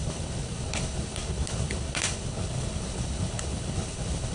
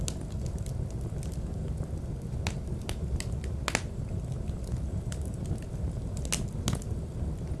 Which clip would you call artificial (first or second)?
first